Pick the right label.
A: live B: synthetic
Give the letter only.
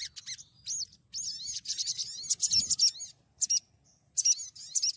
A